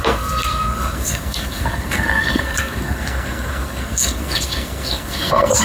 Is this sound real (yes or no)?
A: no